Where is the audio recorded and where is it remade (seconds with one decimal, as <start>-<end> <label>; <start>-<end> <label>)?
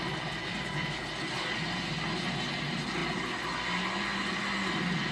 0.0-5.1 recorded